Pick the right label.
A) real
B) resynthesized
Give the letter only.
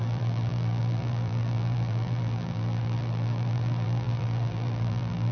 B